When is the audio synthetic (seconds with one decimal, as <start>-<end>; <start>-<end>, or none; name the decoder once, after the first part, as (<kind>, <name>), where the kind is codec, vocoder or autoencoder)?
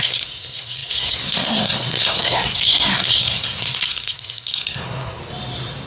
0.0-5.2 (codec, SNAC)